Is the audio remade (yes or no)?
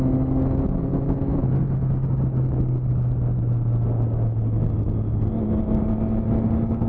no